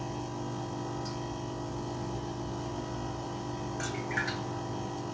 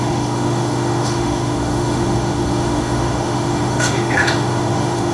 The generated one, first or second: second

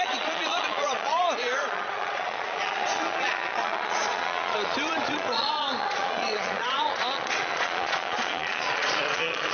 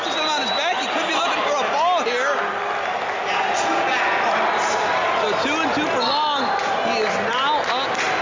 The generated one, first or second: first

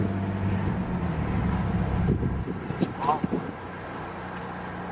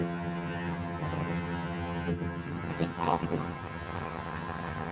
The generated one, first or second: second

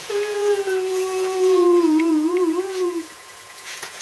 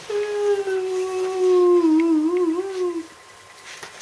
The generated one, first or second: first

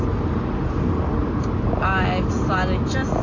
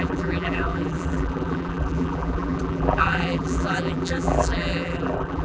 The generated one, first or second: second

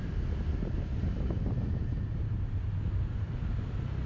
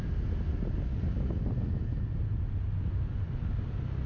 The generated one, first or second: first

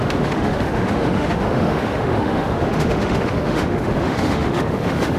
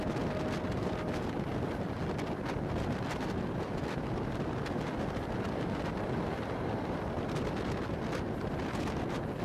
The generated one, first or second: first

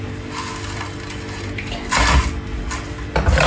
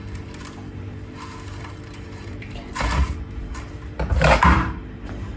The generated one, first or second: second